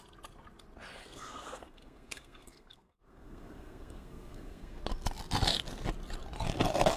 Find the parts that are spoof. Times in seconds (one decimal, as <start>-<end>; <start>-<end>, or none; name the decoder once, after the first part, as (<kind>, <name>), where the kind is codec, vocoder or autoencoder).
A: 1.0-4.8 (codec, SNAC)